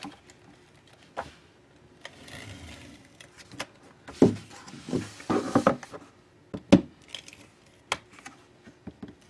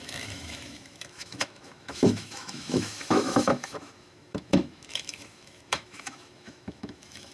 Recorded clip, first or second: first